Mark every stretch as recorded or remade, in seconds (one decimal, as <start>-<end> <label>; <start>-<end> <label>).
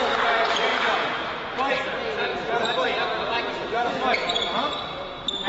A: 0.0-0.7 recorded; 0.7-1.3 remade; 1.3-2.3 recorded; 2.3-4.5 remade; 4.5-5.5 recorded